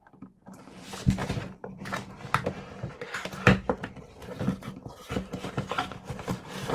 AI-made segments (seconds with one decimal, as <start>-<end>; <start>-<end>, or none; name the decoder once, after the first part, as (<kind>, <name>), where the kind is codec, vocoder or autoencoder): none